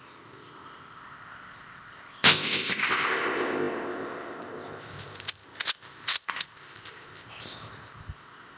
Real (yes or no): no